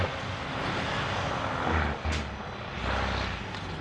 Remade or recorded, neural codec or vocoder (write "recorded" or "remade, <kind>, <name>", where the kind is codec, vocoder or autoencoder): recorded